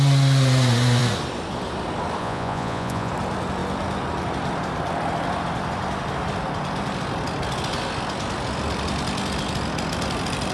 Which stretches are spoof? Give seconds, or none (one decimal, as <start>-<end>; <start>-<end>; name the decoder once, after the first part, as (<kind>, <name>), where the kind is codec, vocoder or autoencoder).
2.2-3.1 (vocoder, Vocos)